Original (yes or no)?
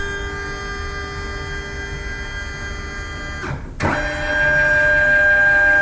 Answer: yes